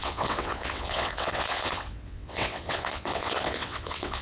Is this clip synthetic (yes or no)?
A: yes